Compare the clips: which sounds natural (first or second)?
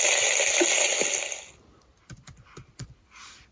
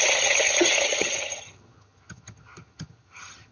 first